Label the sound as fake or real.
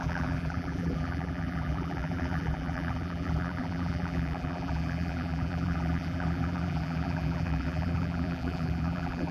fake